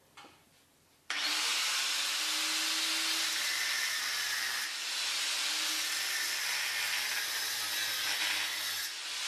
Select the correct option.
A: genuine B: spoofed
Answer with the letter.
A